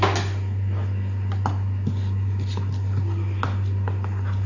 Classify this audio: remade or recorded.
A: recorded